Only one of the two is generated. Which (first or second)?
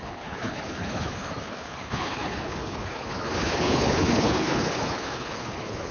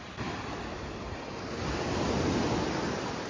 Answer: first